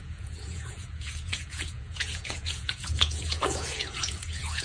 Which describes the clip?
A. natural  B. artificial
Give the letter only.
B